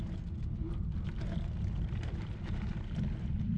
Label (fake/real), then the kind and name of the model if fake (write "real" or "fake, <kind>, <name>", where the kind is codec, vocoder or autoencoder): real